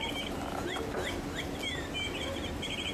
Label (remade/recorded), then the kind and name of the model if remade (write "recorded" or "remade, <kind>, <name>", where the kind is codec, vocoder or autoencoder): recorded